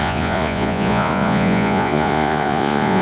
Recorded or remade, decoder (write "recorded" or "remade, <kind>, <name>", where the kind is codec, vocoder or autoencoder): remade, vocoder, Vocos